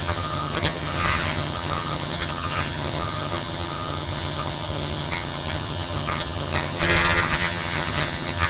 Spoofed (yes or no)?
yes